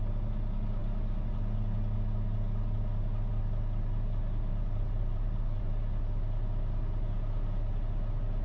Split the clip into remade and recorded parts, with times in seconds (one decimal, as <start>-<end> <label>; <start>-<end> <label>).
0.0-4.5 recorded; 4.5-5.7 remade; 5.7-8.4 recorded